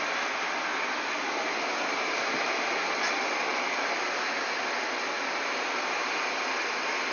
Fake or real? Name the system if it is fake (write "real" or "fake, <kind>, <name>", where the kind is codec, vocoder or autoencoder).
real